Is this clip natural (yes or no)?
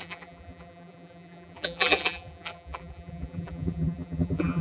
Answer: no